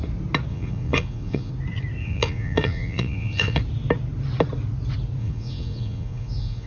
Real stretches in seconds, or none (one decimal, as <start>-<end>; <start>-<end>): 0.0-0.5; 1.5-2.0; 3.6-5.2